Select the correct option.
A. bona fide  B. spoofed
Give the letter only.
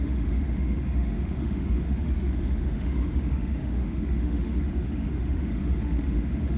B